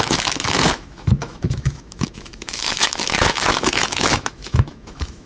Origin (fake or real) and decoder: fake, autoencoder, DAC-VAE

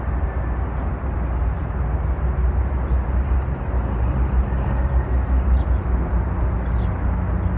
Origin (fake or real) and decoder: real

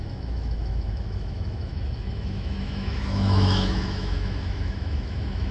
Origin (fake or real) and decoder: fake, autoencoder, DAC-VAE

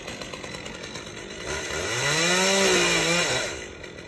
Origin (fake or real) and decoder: real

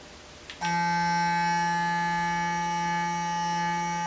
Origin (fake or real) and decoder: real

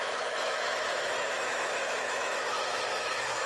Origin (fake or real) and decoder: fake, autoencoder, DAC-VAE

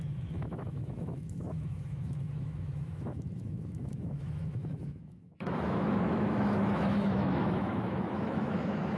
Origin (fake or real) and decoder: fake, autoencoder, DAC-VAE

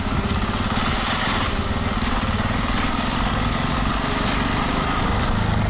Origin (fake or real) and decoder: real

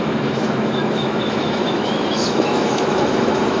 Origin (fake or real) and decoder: fake, autoencoder, DAC-VAE